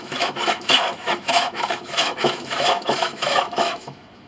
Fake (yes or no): yes